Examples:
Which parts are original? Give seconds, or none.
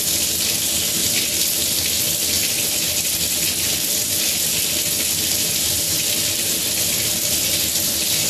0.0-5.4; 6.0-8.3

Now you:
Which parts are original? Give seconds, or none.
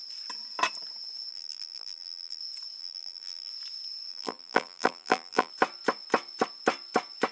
0.0-1.3; 2.4-2.8; 3.5-4.1; 5.5-7.3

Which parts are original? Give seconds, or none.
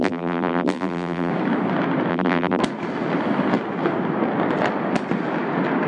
1.3-2.1; 2.6-5.9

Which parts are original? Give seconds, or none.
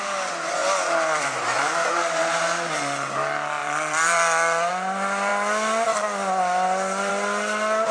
0.0-0.6; 2.4-3.6; 4.7-7.9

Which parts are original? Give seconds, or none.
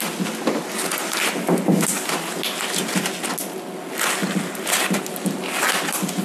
0.0-6.2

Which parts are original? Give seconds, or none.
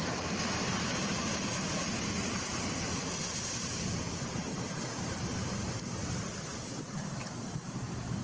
0.0-8.2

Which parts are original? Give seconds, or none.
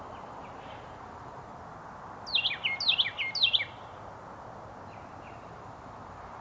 1.5-5.3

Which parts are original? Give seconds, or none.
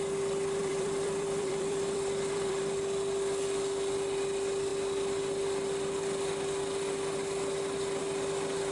0.0-0.6; 2.6-8.7